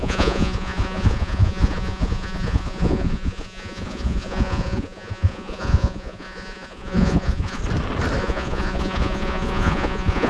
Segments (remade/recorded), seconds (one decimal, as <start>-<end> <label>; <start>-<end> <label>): 0.0-7.6 remade; 7.6-8.2 recorded; 8.2-10.3 remade